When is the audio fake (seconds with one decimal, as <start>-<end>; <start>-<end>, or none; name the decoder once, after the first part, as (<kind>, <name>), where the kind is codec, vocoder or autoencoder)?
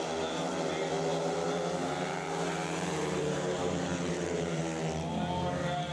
1.1-4.6 (vocoder, BigVGAN v2)